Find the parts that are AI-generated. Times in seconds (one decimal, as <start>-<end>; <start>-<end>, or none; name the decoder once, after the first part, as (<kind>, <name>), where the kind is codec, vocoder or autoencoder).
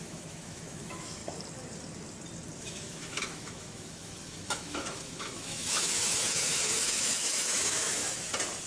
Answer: 0.0-1.2 (autoencoder, DAC-VAE); 2.6-8.0